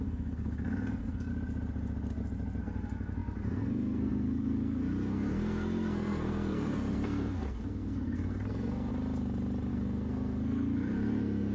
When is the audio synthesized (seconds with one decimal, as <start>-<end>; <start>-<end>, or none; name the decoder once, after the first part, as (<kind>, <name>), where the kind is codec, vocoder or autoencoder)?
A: 0.0-1.3 (codec, SNAC); 2.6-8.9; 9.7-11.5